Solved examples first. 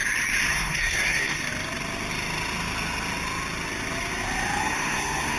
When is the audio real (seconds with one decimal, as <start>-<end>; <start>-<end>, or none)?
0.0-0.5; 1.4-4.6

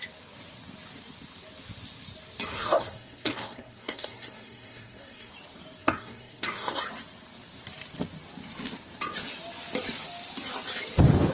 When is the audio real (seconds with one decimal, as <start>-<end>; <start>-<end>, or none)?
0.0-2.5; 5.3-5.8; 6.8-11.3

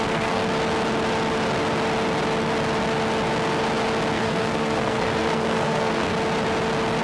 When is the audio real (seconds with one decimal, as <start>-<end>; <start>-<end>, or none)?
0.4-4.1; 6.1-7.0